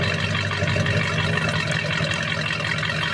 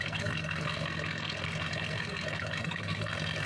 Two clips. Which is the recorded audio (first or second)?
first